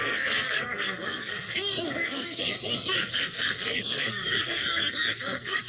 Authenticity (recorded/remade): remade